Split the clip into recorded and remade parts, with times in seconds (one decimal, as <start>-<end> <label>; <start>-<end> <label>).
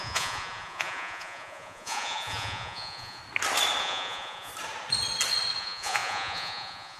0.0-3.2 remade; 3.2-3.8 recorded; 3.8-4.5 remade; 4.5-5.6 recorded; 5.6-7.0 remade